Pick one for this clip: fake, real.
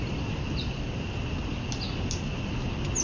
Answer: real